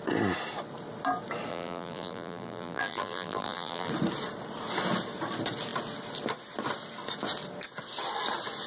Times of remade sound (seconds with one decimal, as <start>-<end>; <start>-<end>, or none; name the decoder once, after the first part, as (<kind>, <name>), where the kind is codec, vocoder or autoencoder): 1.5-3.9 (vocoder, BigVGAN v2)